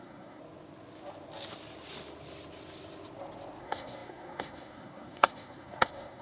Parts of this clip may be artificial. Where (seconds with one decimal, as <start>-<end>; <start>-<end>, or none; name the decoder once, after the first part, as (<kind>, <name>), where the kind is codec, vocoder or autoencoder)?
0.0-0.4 (codec, SNAC); 3.6-6.2